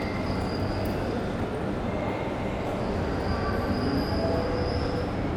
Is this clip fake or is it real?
real